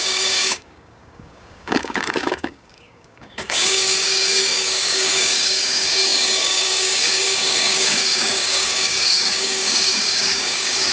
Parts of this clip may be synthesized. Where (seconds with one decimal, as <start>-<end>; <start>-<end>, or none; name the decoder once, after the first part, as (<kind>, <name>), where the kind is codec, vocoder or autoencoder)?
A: 0.0-10.9 (codec, DAC)